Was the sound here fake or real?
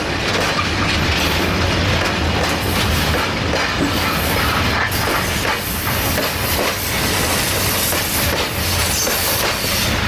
real